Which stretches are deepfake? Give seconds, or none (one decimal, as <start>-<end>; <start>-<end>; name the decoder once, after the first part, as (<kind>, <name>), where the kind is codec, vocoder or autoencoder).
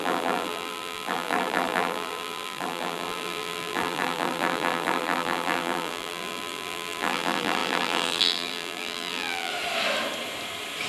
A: 0.0-9.5 (vocoder, BigVGAN v2)